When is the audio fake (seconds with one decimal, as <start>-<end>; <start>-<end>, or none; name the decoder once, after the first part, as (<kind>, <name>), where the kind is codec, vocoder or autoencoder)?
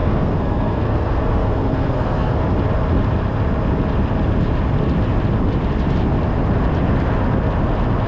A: 0.0-2.4 (codec, SNAC)